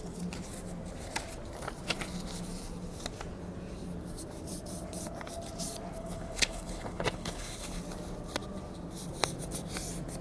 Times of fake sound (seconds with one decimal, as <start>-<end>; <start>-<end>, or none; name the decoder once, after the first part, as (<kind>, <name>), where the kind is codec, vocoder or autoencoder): 6.0-7.8 (codec, HILCodec)